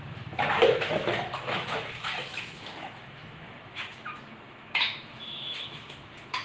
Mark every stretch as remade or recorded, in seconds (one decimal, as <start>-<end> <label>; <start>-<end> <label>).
0.0-6.4 remade